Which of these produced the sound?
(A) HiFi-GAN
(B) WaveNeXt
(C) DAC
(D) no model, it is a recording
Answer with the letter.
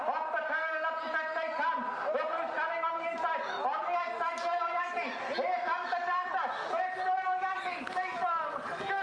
D